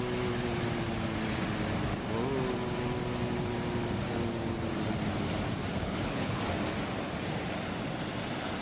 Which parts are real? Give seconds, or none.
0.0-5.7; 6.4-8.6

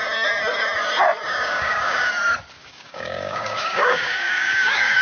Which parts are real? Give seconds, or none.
0.0-1.3; 2.1-2.6